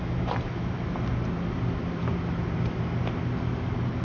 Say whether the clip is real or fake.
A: real